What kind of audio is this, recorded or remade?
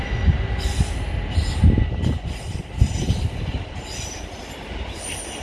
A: recorded